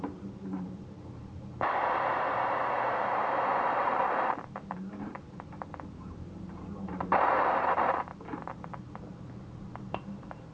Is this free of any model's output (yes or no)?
no